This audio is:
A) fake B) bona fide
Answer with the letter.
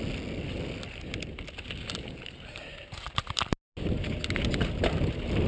B